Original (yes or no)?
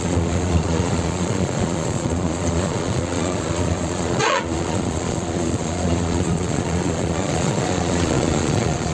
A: no